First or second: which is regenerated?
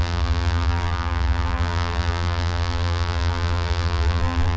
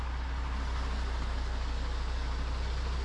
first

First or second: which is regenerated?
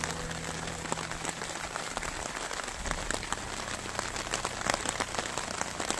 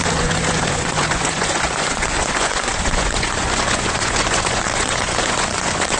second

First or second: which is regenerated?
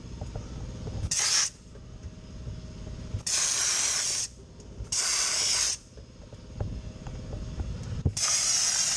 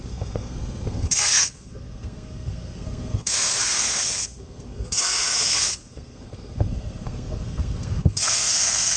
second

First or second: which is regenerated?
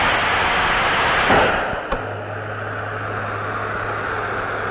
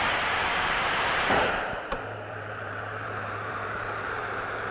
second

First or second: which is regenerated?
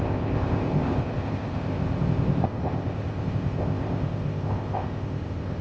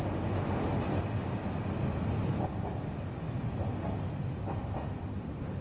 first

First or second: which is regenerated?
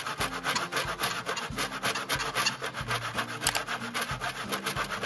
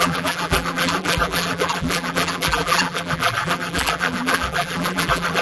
second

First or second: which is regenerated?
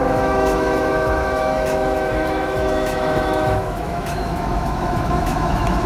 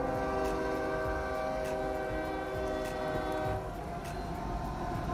first